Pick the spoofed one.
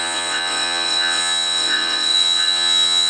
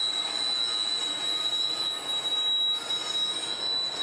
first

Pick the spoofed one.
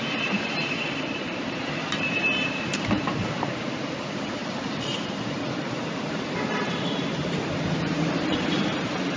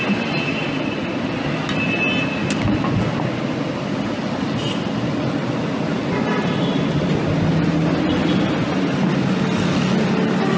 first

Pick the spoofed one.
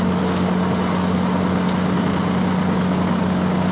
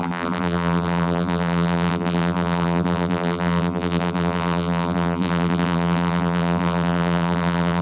second